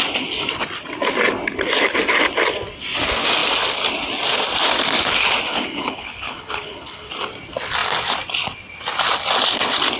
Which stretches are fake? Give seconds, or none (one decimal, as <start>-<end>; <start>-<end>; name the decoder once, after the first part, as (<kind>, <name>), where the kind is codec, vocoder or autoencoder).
5.5-7.1 (codec, HILCodec)